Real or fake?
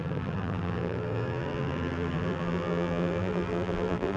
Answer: fake